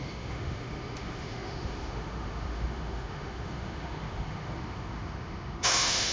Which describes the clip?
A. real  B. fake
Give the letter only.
B